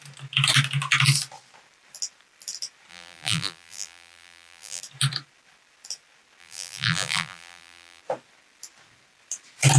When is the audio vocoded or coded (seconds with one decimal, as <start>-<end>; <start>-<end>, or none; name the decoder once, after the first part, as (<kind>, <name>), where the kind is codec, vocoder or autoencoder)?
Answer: 2.9-4.8 (vocoder, BigVGAN v2); 6.4-8.0